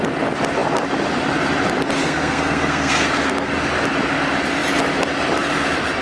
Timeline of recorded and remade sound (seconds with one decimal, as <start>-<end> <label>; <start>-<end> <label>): 0.0-2.0 recorded; 2.0-3.5 remade; 3.5-6.0 recorded